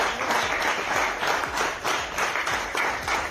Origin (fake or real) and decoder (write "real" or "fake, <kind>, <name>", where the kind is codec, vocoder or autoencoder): real